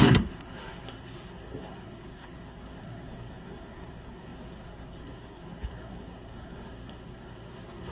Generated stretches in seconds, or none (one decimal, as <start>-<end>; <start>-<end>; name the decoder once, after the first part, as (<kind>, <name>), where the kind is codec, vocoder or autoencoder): 0.0-7.9 (codec, SNAC)